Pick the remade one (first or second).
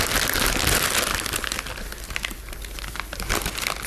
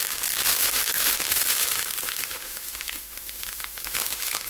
second